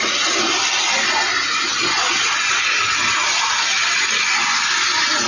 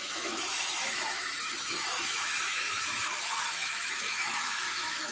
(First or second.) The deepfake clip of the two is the second